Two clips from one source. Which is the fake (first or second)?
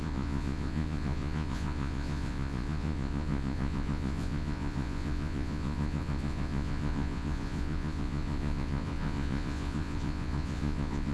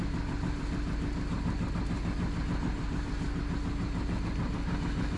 first